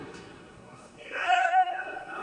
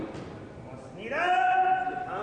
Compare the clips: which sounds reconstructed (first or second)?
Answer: first